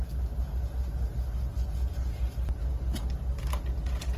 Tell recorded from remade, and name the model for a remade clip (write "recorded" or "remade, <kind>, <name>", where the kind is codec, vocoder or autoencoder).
recorded